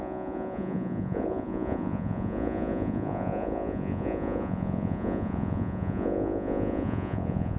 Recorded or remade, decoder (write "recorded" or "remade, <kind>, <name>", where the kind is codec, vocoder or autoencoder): remade, vocoder, Vocos